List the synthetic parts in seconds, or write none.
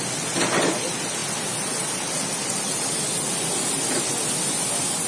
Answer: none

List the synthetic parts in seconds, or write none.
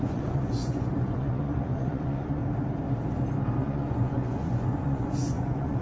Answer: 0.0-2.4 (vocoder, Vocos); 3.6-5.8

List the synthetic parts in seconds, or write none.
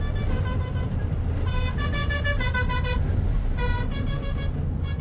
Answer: none